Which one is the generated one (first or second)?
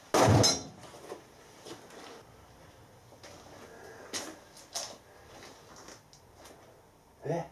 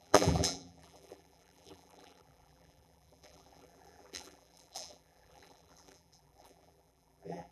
second